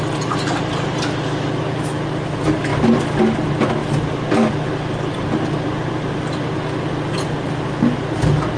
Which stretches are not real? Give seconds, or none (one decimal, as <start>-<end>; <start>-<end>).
none